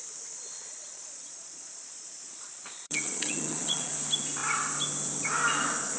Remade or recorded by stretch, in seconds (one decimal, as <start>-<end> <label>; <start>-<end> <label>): 0.0-0.6 recorded; 0.6-3.9 remade; 3.9-6.0 recorded

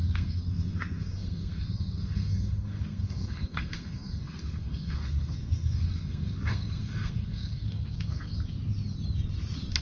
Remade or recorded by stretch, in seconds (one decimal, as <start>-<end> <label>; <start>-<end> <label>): 0.0-8.3 remade; 8.3-9.8 recorded

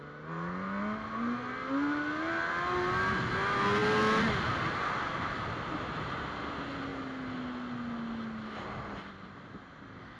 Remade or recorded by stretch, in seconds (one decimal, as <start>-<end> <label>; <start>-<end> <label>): 0.0-10.2 recorded

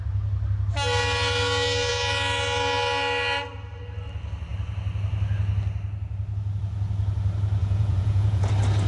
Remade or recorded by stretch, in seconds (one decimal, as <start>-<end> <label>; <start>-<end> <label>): 0.0-7.6 recorded; 7.6-8.5 remade; 8.5-8.9 recorded

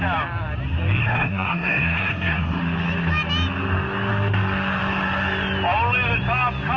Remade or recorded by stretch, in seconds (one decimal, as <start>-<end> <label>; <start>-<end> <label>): 0.0-1.0 recorded; 1.0-2.6 remade; 2.6-6.8 recorded

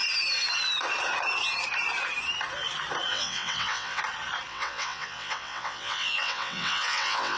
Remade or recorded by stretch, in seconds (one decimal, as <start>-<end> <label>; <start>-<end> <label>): 0.0-3.1 recorded; 3.1-4.0 remade; 4.0-4.5 recorded; 4.5-7.4 remade